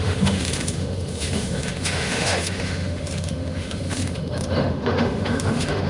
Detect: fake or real fake